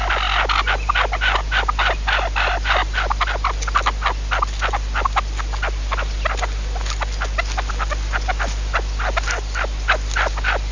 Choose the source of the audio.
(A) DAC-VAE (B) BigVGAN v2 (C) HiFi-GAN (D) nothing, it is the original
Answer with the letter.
D